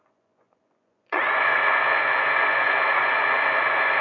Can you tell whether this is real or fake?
fake